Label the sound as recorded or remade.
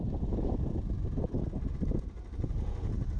recorded